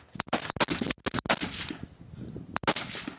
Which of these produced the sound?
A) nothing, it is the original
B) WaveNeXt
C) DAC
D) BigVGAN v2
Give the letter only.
A